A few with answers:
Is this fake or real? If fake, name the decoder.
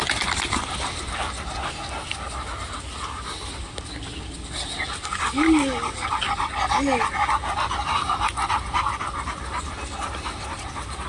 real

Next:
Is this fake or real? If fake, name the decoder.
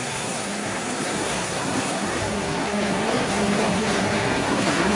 fake, codec, SNAC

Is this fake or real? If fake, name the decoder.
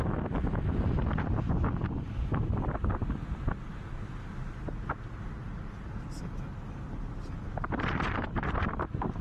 real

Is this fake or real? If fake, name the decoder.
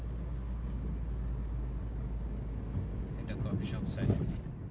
real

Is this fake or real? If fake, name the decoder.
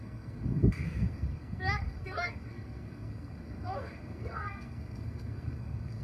fake, codec, SNAC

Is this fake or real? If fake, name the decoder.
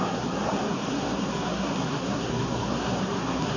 fake, codec, SNAC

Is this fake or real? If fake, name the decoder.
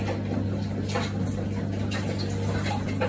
real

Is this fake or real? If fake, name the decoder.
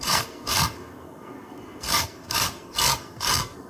fake, codec, SNAC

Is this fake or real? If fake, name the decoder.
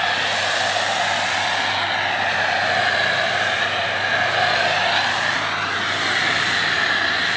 real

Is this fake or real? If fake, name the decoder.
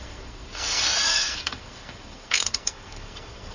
fake, codec, SNAC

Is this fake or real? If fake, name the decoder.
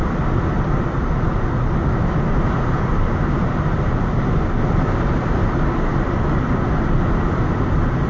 real